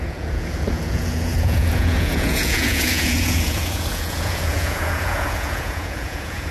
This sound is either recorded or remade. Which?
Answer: remade